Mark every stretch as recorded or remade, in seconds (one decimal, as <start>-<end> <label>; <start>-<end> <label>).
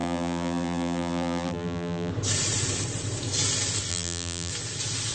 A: 0.0-2.1 remade; 2.1-3.9 recorded; 3.9-4.5 remade; 4.5-5.1 recorded